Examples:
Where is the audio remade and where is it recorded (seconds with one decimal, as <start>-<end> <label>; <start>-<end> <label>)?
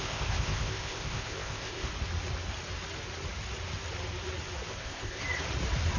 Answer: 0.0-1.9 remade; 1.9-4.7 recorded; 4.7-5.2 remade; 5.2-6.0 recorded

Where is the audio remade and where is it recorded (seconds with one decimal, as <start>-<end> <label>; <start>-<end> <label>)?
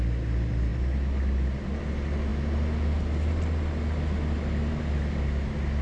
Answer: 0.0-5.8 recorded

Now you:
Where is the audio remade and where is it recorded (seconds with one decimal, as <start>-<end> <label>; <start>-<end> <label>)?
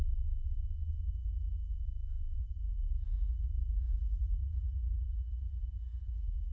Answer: 0.0-2.4 recorded; 2.4-6.5 remade